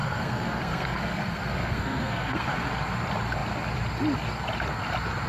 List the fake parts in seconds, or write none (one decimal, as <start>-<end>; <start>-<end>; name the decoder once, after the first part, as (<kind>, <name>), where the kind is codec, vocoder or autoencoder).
0.0-2.7 (codec, SNAC)